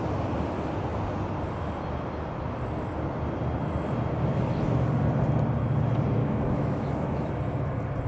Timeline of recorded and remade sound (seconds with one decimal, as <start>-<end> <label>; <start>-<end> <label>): 0.0-6.2 recorded; 6.2-7.3 remade; 7.3-8.1 recorded

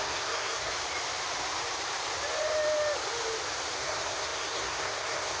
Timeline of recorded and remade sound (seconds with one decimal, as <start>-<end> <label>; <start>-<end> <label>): 0.0-0.7 remade; 0.7-3.8 recorded; 3.8-5.4 remade

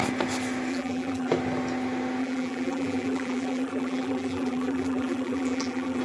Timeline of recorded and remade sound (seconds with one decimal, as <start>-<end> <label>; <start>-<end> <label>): 0.0-0.7 recorded; 0.7-1.3 remade; 1.3-2.2 recorded; 2.2-6.0 remade

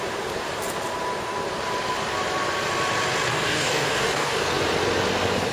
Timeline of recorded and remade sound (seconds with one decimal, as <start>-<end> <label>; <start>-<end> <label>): 0.0-3.3 recorded; 3.3-4.5 remade; 4.5-5.5 recorded

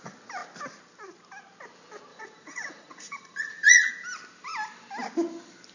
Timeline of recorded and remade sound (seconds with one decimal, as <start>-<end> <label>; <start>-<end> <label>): 0.0-2.1 recorded; 2.1-3.9 remade; 3.9-5.7 recorded

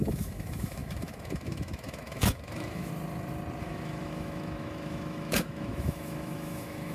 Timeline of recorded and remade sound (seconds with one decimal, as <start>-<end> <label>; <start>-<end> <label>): 0.0-2.9 remade; 2.9-3.6 recorded; 3.6-6.9 remade

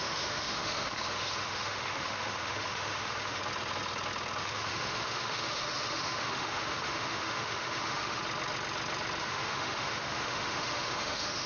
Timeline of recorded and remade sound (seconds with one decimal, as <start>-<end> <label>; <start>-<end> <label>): 0.0-3.4 remade; 3.4-4.4 recorded; 4.4-8.2 remade; 8.2-9.2 recorded; 9.2-11.5 remade